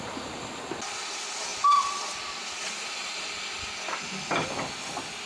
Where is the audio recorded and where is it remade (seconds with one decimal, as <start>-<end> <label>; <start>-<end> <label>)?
0.0-5.3 recorded